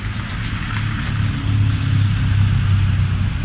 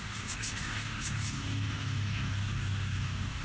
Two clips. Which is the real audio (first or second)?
first